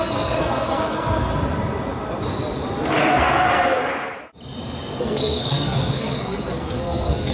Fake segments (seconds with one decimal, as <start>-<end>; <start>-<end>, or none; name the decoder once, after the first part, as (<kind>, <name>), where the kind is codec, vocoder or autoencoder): 0.0-1.3 (codec, SNAC); 3.1-3.8; 5.0-7.3